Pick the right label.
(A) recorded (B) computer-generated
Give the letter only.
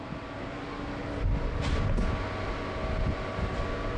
A